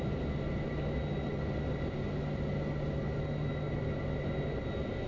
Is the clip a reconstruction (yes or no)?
no